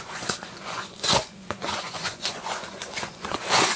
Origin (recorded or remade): remade